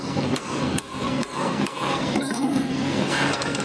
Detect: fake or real fake